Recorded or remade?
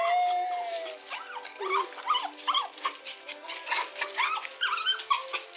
recorded